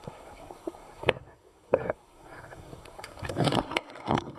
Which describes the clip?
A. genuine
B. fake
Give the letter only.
B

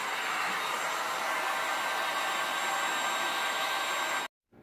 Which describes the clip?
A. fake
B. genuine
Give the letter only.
B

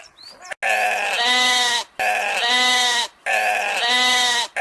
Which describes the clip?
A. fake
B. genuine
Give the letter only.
B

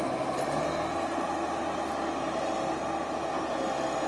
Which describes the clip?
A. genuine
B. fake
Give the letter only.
A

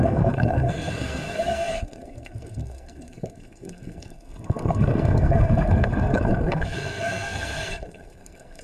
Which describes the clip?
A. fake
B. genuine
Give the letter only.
A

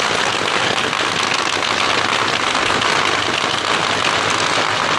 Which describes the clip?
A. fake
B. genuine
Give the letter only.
B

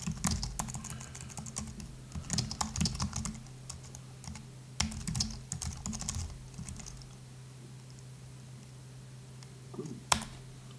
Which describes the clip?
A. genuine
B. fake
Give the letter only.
A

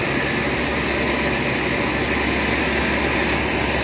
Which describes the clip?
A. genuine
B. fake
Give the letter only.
A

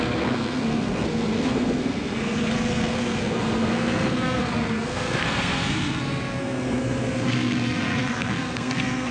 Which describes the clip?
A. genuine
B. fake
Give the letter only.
B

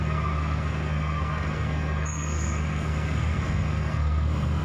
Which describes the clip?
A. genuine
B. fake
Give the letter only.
B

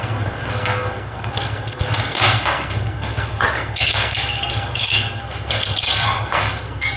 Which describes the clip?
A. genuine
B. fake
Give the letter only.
B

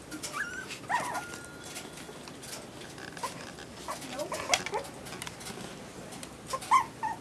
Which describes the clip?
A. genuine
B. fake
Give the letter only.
A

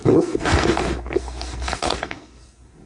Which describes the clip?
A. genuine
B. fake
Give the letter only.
B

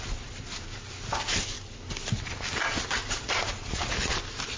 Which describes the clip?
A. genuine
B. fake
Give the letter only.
A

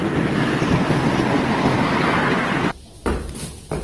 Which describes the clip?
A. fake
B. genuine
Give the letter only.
B